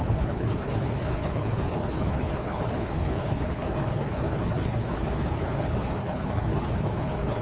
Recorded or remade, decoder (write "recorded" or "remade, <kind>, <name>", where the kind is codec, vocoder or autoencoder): remade, codec, HILCodec